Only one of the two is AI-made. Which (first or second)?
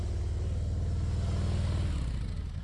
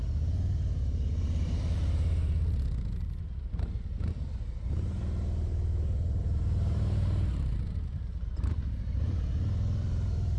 second